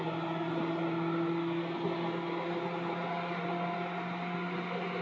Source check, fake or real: real